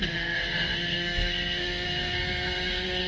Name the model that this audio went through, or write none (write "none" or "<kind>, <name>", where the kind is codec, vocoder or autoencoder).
codec, SNAC